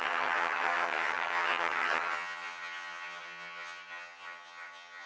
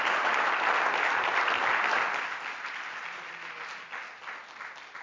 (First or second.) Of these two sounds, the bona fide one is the second